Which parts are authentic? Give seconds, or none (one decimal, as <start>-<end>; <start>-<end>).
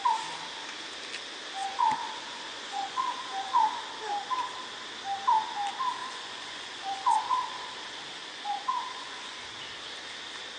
0.0-1.6; 3.8-6.0; 7.7-8.2; 9.6-10.6